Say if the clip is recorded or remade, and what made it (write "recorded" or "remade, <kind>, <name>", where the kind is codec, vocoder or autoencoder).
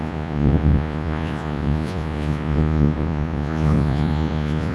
remade, vocoder, Vocos